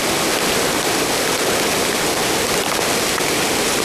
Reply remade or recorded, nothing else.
recorded